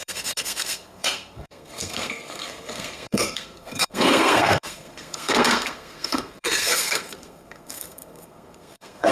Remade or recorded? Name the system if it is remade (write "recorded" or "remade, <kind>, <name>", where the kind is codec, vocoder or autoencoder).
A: remade, codec, SNAC